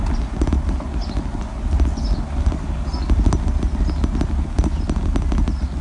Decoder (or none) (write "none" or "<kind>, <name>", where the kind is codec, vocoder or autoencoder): none